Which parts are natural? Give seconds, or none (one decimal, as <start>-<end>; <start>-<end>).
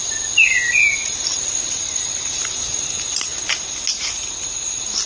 0.0-5.1